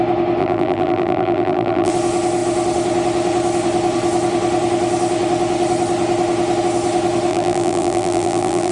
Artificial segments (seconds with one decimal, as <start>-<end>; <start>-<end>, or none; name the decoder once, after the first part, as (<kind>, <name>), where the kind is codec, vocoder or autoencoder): 0.4-1.9 (vocoder, BigVGAN v2); 7.3-8.7